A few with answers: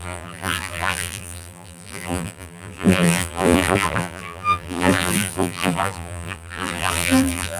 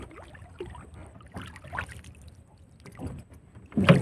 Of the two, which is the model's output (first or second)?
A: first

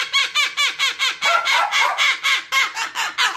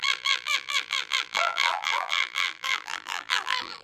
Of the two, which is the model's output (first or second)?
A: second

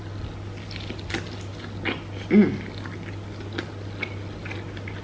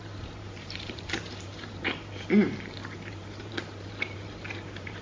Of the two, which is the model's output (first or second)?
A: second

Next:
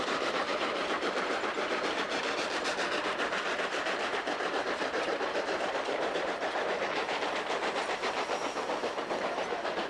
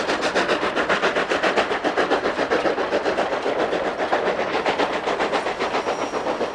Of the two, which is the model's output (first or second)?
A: first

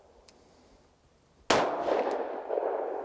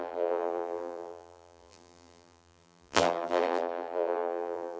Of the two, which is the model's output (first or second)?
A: second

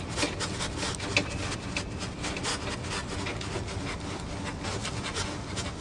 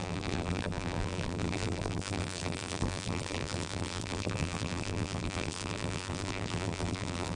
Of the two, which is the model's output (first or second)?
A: second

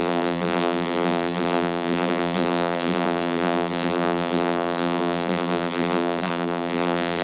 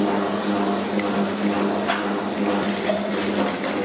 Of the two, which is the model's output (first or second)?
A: first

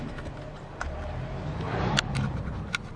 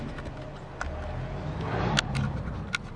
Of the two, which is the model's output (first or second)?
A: first